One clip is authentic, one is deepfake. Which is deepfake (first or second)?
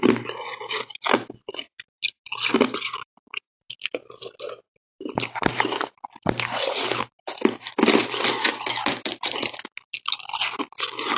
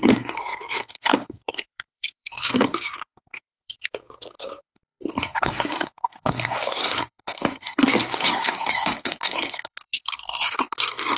second